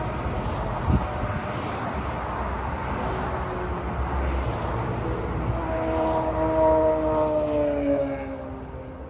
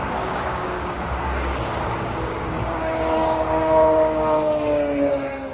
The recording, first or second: first